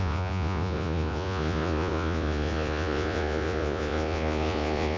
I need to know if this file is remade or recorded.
remade